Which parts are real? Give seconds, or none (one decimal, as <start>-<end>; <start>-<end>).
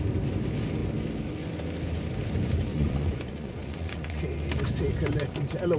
0.0-2.7; 4.2-5.8